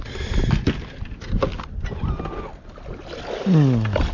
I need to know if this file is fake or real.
real